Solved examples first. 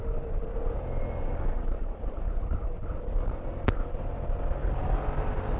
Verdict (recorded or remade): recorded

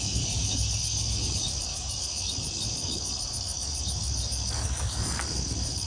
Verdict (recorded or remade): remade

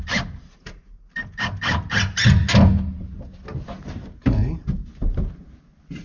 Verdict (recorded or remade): recorded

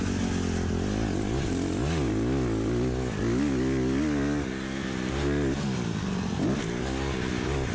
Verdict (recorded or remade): recorded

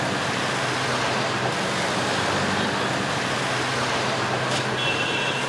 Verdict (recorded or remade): recorded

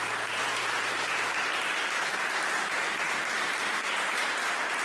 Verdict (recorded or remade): remade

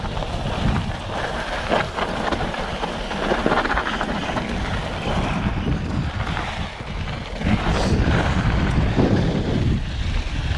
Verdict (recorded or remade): recorded